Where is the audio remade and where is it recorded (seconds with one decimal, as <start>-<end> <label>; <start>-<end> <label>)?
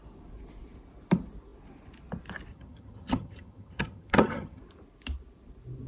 0.0-2.5 recorded; 2.5-4.6 remade; 4.6-5.9 recorded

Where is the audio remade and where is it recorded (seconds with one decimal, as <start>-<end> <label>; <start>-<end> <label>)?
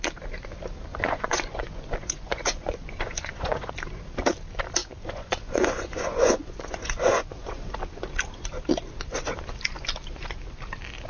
0.0-0.9 recorded; 0.9-3.7 remade; 3.7-4.8 recorded; 4.8-7.7 remade; 7.7-11.1 recorded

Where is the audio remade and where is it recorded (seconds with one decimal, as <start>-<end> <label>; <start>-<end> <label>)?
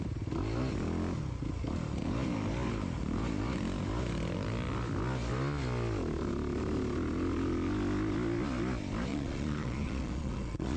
0.0-9.1 recorded; 9.1-10.8 remade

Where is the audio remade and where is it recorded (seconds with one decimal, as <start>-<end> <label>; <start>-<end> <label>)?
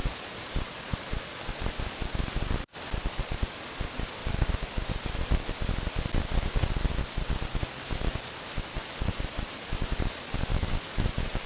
0.0-1.2 remade; 1.2-10.5 recorded; 10.5-11.5 remade